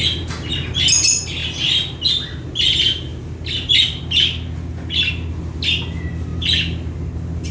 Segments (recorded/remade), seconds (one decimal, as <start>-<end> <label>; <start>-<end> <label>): 0.0-7.5 recorded